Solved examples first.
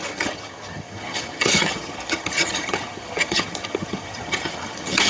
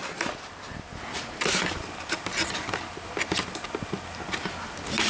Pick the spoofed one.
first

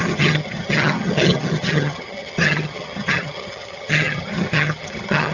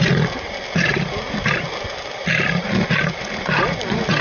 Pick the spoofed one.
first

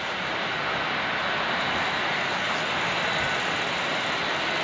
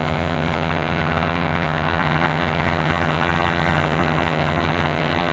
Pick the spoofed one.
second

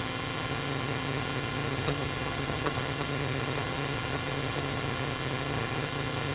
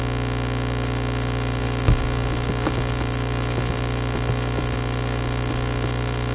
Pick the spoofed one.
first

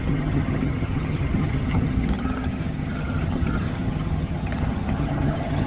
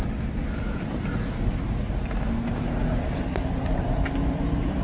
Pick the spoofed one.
first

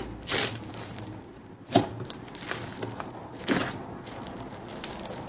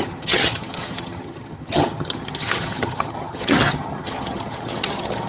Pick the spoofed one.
second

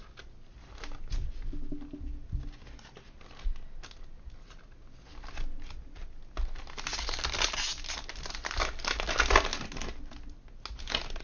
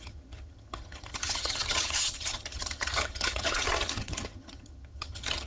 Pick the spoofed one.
second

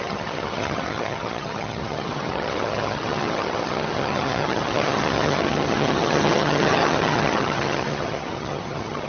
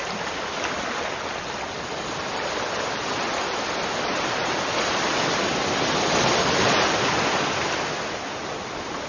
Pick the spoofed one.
first